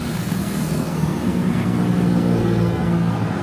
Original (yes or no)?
no